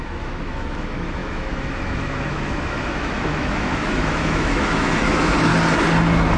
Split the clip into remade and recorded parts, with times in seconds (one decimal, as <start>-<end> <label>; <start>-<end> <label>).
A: 0.0-5.5 remade; 5.5-6.4 recorded